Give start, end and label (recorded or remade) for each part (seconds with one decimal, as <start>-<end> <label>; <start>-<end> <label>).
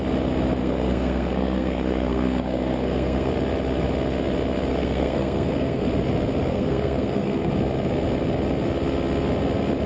0.0-0.6 recorded; 0.6-3.3 remade; 3.3-4.7 recorded; 4.7-5.9 remade; 5.9-6.5 recorded; 6.5-7.5 remade; 7.5-9.9 recorded